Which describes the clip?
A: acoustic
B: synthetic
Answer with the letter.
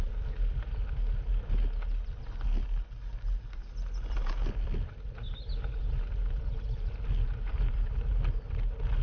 A